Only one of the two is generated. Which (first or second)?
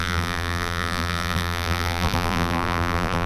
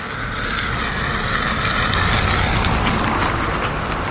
first